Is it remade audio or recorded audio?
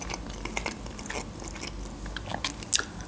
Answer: recorded